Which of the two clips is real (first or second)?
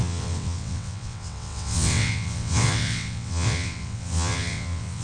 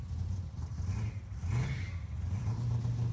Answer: second